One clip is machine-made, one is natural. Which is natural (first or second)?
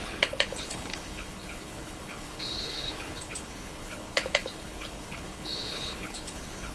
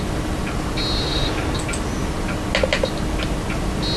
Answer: second